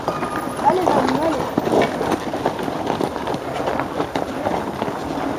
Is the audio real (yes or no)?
yes